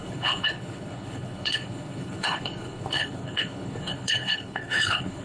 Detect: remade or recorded remade